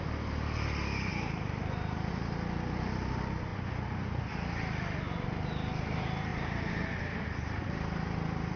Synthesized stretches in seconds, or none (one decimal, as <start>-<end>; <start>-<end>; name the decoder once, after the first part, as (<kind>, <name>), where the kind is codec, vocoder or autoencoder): 1.1-2.1 (vocoder, BigVGAN v2); 6.3-6.8

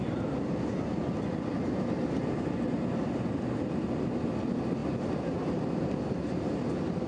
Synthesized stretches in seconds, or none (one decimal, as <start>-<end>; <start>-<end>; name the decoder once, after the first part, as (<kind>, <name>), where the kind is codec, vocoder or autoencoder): none

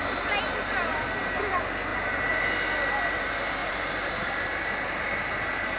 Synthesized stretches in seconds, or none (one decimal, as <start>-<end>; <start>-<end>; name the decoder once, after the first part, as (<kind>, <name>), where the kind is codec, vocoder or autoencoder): 0.9-1.4 (vocoder, BigVGAN v2); 1.9-2.4; 3.6-4.1

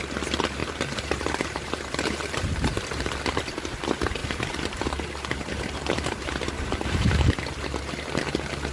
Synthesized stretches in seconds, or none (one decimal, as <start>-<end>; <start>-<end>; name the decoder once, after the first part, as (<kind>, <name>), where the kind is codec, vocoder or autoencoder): 0.6-3.2 (vocoder, BigVGAN v2); 4.2-8.2

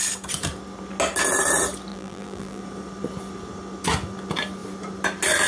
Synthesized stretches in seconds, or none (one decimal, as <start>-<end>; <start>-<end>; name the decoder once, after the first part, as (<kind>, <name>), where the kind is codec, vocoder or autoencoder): 1.9-2.6 (vocoder, BigVGAN v2)